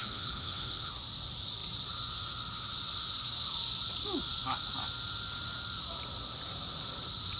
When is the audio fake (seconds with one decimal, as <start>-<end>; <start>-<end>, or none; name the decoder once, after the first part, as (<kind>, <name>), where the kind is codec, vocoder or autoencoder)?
0.0-0.9 (codec, HILCodec)